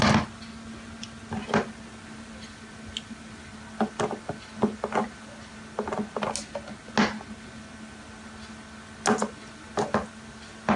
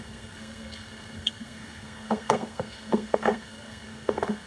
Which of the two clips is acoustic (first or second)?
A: first